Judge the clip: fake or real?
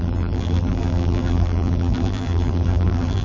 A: fake